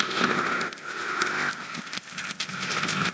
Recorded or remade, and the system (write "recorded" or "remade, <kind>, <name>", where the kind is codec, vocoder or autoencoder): remade, codec, ZipCodec